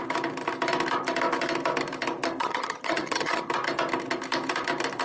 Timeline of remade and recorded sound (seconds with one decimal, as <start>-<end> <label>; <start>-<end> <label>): 0.0-2.4 recorded; 2.4-3.5 remade; 3.5-5.0 recorded